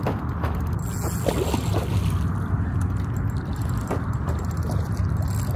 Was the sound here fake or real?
real